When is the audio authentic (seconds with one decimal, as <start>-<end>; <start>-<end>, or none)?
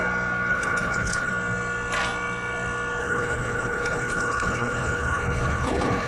0.0-0.5; 1.3-3.0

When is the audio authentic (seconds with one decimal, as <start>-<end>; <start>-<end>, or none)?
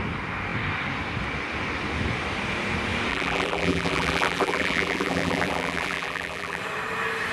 0.0-3.1; 6.6-7.3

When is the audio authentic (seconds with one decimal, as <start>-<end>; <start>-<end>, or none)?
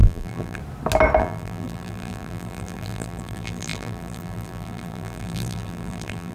0.6-1.2